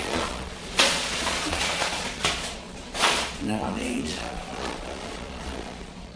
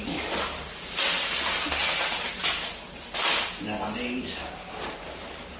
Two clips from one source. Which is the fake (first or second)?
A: first